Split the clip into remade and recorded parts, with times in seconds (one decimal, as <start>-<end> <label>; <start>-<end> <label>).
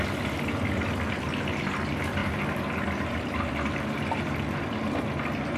0.0-2.2 recorded; 2.2-5.0 remade; 5.0-5.6 recorded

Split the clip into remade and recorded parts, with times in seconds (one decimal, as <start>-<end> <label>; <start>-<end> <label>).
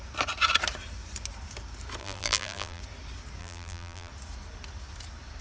0.0-2.0 recorded; 2.0-2.8 remade; 2.8-3.4 recorded; 3.4-4.1 remade; 4.1-5.4 recorded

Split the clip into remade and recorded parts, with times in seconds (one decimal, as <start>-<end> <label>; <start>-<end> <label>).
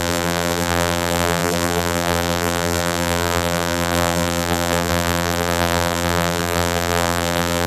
0.0-7.7 remade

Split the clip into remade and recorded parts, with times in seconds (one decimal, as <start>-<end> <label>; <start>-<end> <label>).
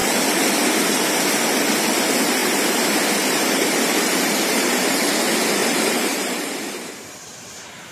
0.0-2.4 recorded; 2.4-5.1 remade; 5.1-5.6 recorded; 5.6-7.9 remade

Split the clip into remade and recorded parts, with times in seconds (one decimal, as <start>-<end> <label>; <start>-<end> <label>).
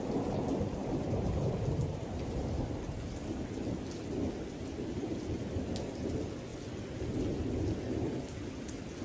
0.0-0.8 recorded; 0.8-2.8 remade; 2.8-9.0 recorded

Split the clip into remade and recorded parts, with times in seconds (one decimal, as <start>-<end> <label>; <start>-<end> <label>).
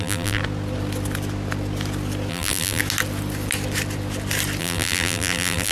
0.0-0.4 remade; 0.4-2.3 recorded; 2.3-2.8 remade; 2.8-4.6 recorded; 4.6-5.7 remade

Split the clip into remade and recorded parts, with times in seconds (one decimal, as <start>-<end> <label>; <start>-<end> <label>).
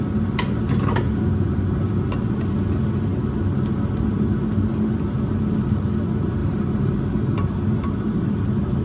0.0-6.4 recorded; 6.4-7.0 remade; 7.0-8.8 recorded